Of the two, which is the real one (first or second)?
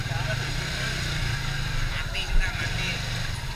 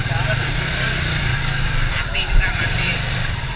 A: first